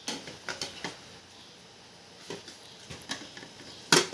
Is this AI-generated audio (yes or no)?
no